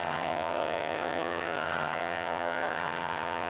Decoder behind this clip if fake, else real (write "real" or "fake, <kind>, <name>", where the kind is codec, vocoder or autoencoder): fake, vocoder, HiFi-GAN